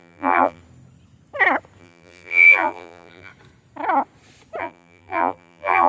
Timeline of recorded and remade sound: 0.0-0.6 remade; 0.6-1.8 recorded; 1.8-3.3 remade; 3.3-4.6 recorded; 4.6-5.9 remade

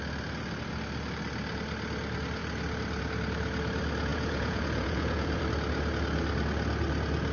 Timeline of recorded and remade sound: 0.0-4.1 recorded; 4.1-5.4 remade; 5.4-7.3 recorded

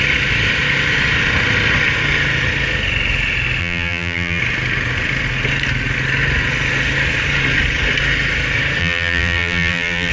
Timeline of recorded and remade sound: 0.0-3.6 recorded; 3.6-4.4 remade; 4.4-8.8 recorded; 8.8-10.1 remade

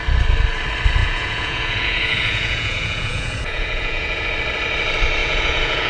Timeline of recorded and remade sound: 0.0-1.0 recorded; 1.0-4.3 remade; 4.3-5.2 recorded; 5.2-5.9 remade

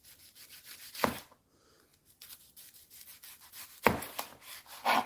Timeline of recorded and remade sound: 0.0-1.9 remade; 1.9-3.5 recorded; 3.5-5.1 remade

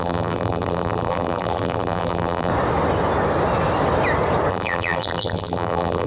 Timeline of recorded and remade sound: 0.0-2.5 remade; 2.5-4.5 recorded; 4.5-6.1 remade

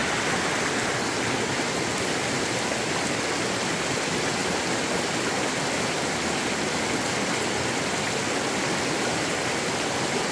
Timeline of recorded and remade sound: 0.0-10.3 recorded